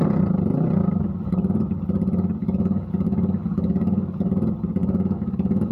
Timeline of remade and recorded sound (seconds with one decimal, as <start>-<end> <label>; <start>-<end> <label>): 0.0-2.4 recorded; 2.4-4.3 remade; 4.3-4.8 recorded; 4.8-5.7 remade